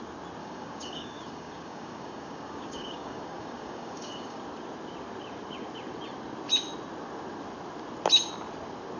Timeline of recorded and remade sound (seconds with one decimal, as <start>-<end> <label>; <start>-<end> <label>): 0.0-0.4 recorded; 0.4-4.4 remade; 4.4-9.0 recorded